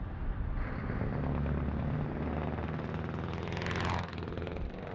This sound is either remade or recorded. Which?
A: recorded